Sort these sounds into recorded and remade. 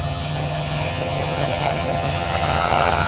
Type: remade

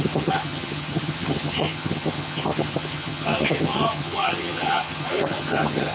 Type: remade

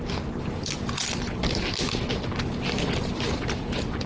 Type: recorded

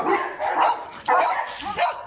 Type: recorded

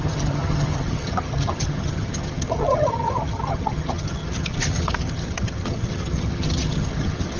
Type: remade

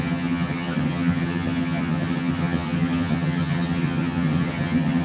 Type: remade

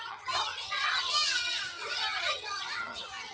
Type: remade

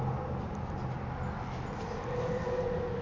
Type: recorded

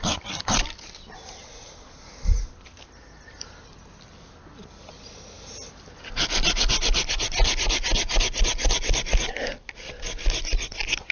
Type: recorded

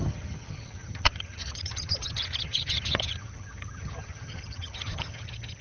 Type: remade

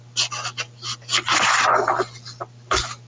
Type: recorded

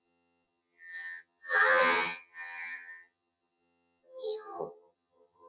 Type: remade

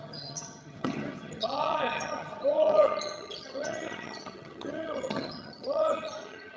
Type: remade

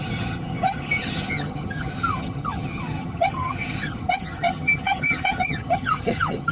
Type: remade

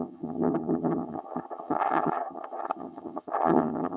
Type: remade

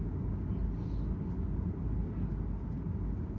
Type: recorded